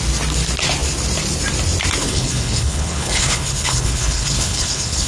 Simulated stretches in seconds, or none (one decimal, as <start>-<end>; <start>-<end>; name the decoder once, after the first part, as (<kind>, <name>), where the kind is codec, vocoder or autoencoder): 2.0-5.1 (codec, HILCodec)